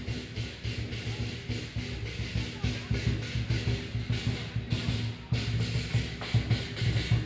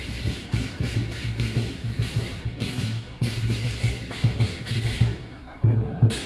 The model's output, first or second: second